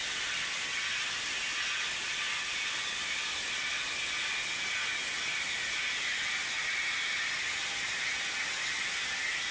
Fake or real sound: real